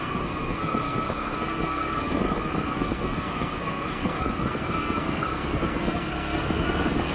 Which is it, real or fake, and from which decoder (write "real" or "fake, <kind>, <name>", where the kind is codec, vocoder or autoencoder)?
fake, codec, SNAC